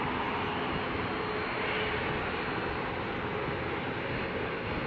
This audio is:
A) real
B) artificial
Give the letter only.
A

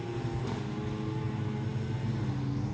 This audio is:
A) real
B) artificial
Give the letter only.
A